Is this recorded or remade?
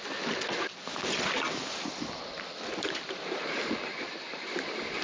recorded